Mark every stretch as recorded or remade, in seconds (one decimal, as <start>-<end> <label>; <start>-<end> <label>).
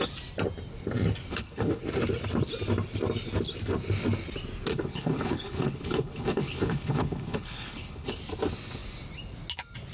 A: 0.0-1.3 recorded; 1.3-1.8 remade; 1.8-4.7 recorded; 4.7-8.2 remade; 8.2-9.9 recorded